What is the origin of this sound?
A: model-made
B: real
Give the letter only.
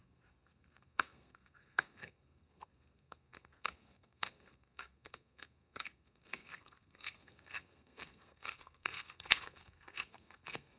A